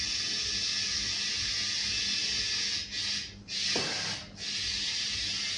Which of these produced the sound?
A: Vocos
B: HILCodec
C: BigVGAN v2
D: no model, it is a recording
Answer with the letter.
D